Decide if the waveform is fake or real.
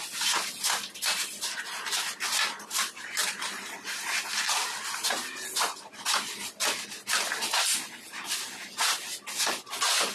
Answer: real